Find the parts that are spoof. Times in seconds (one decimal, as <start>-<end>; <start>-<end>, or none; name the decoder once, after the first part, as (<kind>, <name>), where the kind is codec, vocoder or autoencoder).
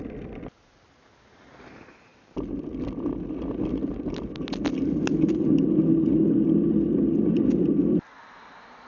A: none